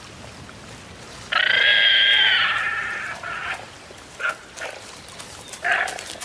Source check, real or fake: real